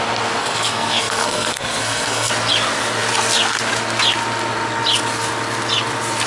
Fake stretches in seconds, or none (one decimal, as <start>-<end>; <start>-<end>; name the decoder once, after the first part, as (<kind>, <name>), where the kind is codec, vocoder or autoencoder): 0.4-2.3 (codec, SNAC)